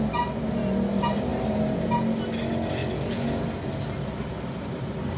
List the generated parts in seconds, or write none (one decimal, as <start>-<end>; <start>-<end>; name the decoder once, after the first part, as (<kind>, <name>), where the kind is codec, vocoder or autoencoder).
none